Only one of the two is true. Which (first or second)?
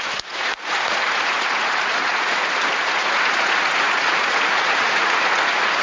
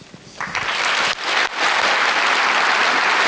second